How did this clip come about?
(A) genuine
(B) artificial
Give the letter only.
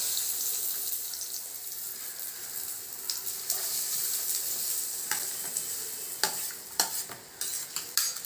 A